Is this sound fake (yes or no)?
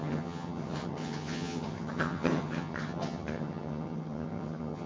yes